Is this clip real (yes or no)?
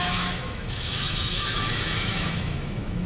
no